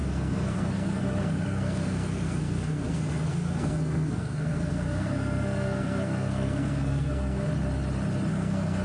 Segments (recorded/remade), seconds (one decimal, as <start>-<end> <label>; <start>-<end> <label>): 0.0-7.5 remade; 7.5-8.3 recorded; 8.3-8.8 remade

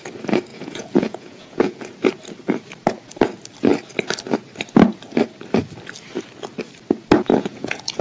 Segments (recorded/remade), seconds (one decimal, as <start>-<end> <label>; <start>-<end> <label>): 0.0-0.5 recorded; 0.5-1.8 remade; 1.8-7.3 recorded; 7.3-8.0 remade

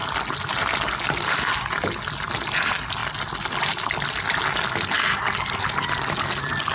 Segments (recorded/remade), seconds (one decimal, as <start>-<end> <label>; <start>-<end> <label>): 0.0-6.7 recorded

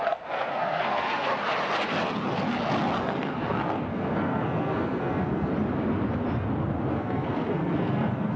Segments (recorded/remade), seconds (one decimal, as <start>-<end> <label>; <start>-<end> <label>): 0.0-1.3 remade; 1.3-3.0 recorded; 3.0-5.5 remade; 5.5-6.9 recorded; 6.9-8.4 remade

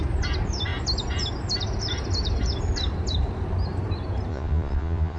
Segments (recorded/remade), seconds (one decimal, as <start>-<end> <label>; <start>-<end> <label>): 0.0-4.3 recorded; 4.3-5.2 remade

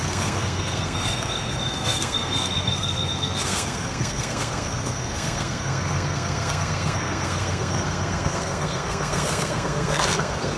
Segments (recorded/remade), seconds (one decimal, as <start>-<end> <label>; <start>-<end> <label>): 0.0-10.6 remade